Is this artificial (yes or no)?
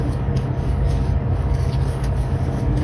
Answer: yes